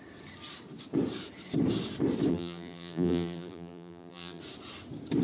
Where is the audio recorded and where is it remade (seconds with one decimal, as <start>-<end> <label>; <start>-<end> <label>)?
0.0-2.3 recorded; 2.3-4.4 remade; 4.4-5.2 recorded